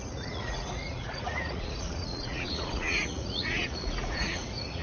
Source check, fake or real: fake